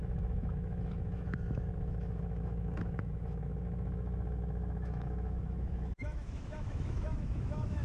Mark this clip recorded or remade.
remade